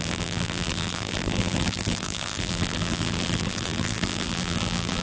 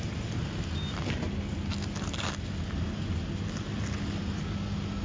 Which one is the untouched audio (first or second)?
second